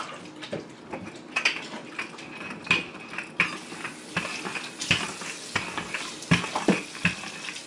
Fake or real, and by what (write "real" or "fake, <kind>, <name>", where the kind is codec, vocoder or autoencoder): real